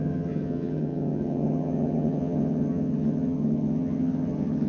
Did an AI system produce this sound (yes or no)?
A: yes